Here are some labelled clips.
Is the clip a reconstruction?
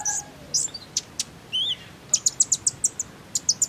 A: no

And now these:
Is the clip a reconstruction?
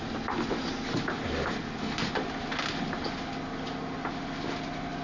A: no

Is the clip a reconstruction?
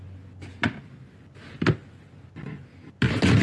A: no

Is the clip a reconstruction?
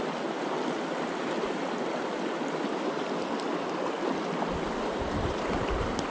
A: no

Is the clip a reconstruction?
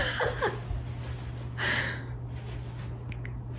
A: no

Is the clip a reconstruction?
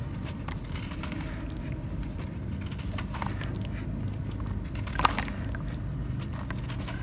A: no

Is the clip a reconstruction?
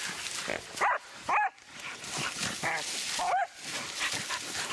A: no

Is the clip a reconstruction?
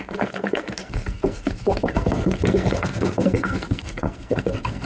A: yes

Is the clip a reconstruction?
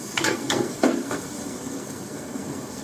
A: yes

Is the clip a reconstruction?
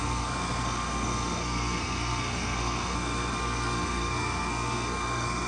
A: yes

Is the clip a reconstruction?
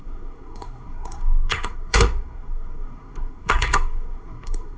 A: yes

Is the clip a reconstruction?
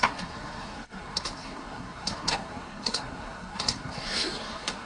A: yes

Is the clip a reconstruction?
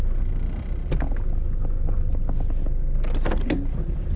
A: no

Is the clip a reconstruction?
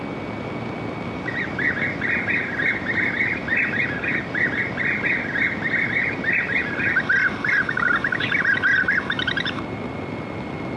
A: no